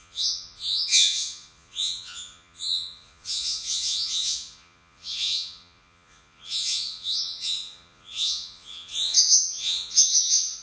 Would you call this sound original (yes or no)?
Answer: no